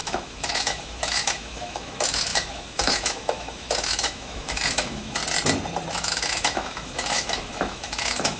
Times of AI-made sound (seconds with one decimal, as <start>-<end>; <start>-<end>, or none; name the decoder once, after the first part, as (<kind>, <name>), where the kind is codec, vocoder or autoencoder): 0.0-5.2 (autoencoder, DAC-VAE); 5.9-8.4